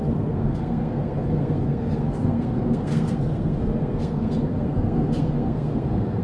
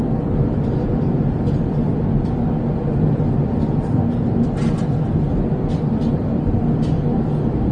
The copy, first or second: first